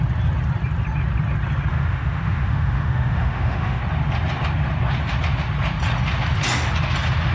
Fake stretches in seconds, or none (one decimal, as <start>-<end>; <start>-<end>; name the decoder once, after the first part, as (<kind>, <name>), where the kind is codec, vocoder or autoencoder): 1.7-3.8 (autoencoder, DAC-VAE)